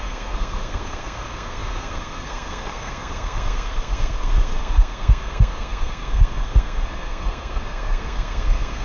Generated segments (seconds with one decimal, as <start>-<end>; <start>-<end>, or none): 0.0-8.8

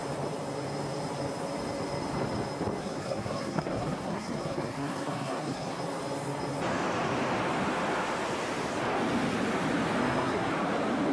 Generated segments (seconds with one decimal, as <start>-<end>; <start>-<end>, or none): 2.8-5.8; 10.0-10.5

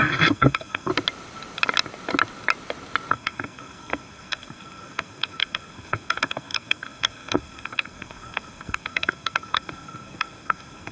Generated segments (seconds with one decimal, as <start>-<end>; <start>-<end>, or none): 0.0-0.9; 3.1-10.9

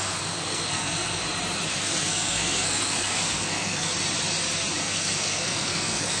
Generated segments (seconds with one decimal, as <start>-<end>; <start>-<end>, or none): 0.0-1.2; 1.7-3.9; 4.8-6.2

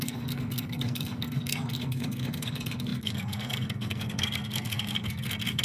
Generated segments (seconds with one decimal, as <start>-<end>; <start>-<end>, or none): 0.0-5.6

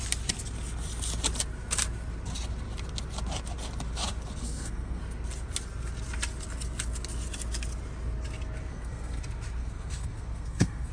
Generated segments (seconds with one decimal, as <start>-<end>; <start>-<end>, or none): 4.4-5.0; 8.7-9.2; 9.6-10.9

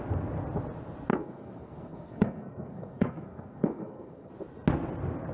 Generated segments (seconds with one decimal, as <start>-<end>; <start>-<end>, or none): 1.1-4.3

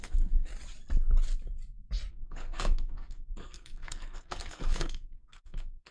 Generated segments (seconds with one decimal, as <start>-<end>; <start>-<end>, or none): 0.0-0.5; 2.1-5.9